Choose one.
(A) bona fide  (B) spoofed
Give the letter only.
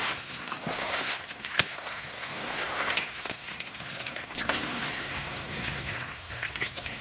B